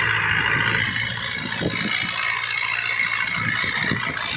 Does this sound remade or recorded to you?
recorded